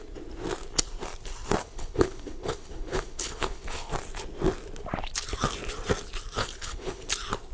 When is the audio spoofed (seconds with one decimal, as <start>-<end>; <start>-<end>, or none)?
1.6-3.9; 6.4-7.1